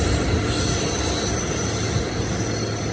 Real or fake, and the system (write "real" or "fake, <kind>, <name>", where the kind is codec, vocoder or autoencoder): real